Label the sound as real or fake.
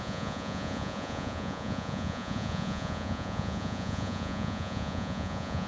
fake